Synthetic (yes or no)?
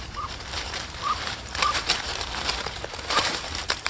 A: yes